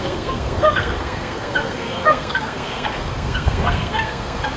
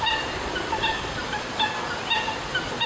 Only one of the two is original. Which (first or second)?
second